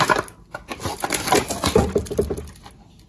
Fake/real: real